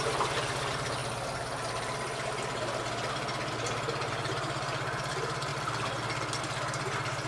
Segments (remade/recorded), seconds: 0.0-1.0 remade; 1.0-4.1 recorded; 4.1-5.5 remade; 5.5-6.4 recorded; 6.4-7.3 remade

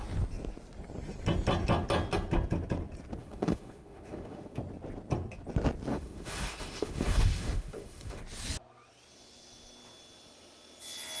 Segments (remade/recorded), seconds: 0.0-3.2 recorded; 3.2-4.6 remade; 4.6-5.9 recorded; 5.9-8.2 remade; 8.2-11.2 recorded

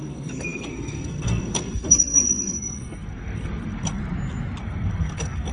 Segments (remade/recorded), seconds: 0.0-4.0 remade; 4.0-4.6 recorded; 4.6-5.5 remade